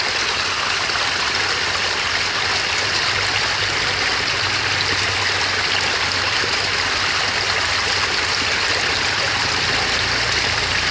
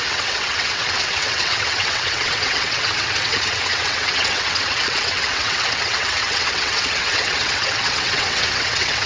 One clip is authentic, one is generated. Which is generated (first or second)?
second